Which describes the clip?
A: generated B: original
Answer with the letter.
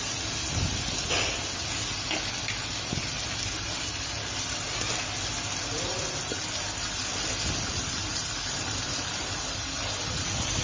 B